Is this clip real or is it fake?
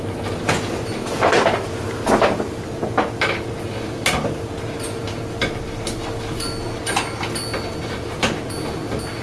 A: real